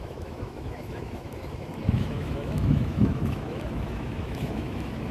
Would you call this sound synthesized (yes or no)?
yes